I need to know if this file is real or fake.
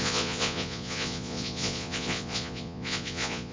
fake